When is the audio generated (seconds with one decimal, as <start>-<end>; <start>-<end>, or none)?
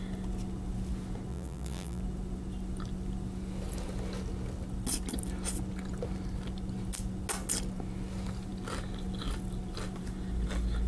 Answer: 1.3-2.0